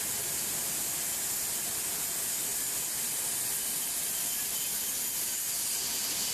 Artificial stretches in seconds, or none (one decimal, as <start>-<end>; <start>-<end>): none